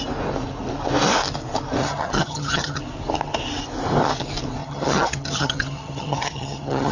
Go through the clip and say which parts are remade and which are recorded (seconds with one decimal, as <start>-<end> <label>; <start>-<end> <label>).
0.0-1.8 recorded; 1.8-2.8 remade; 2.8-4.6 recorded; 4.6-6.9 remade

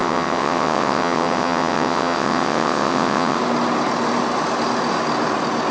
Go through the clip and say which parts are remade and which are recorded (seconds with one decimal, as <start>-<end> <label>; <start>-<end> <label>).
0.0-3.4 remade; 3.4-5.7 recorded

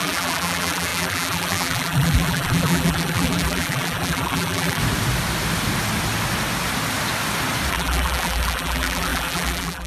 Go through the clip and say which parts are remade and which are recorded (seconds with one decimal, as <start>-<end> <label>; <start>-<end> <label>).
0.0-4.8 remade; 4.8-7.7 recorded; 7.7-9.9 remade

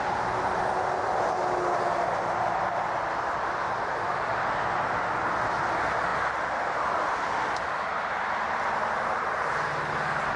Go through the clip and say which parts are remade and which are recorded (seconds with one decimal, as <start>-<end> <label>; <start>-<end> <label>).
0.0-10.4 recorded

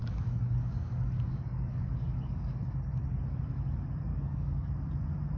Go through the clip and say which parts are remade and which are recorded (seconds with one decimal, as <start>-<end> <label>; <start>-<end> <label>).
0.0-2.9 remade; 2.9-4.1 recorded; 4.1-4.7 remade; 4.7-5.4 recorded